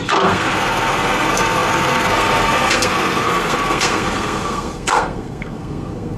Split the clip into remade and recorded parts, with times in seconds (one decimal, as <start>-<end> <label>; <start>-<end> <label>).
0.0-6.2 remade